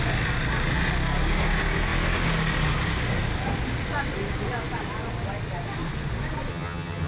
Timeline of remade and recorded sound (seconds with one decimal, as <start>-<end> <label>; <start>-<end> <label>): 0.0-6.5 recorded; 6.5-7.1 remade